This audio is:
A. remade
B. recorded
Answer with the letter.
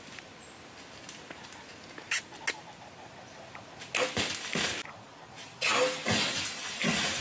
B